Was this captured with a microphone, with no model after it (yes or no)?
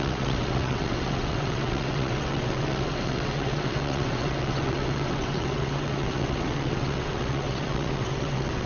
no